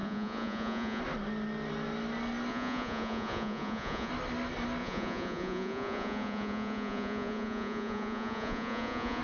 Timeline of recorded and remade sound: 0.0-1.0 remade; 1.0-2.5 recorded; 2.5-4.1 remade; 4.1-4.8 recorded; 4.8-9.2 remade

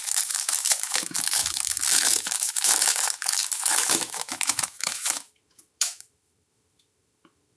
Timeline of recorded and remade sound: 0.0-7.6 remade